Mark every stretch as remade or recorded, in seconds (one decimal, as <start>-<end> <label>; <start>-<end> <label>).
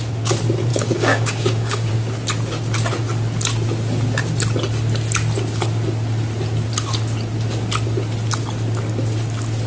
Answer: 0.0-0.7 recorded; 0.7-1.9 remade; 1.9-9.7 recorded